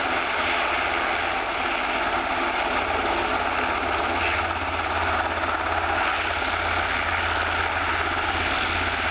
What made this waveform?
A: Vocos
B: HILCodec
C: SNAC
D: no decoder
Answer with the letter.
D